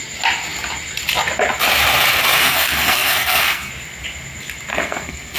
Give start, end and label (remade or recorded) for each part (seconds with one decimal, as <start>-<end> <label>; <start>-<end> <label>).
0.0-2.4 recorded; 2.4-3.7 remade; 3.7-4.7 recorded; 4.7-5.4 remade